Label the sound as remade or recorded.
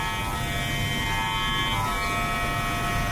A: recorded